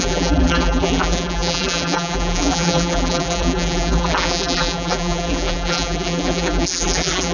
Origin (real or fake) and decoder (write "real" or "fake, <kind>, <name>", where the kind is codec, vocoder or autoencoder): fake, vocoder, BigVGAN v2